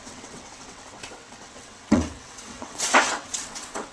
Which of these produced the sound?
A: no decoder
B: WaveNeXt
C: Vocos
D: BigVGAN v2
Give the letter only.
B